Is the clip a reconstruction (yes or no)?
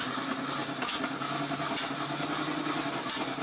no